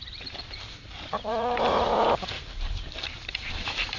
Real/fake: fake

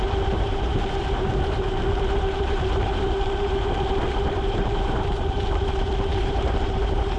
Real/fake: fake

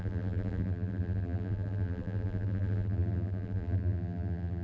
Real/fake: fake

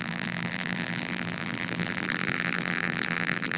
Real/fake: fake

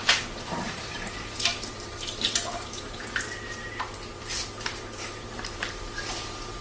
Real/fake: fake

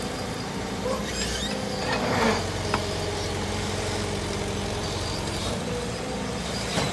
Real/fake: fake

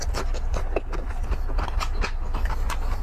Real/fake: real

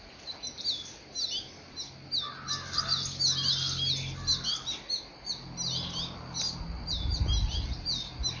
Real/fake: real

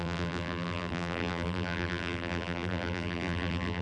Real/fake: fake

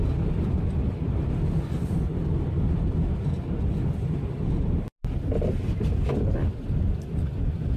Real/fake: real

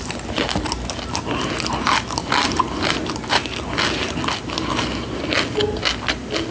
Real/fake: real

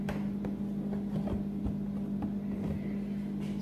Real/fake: real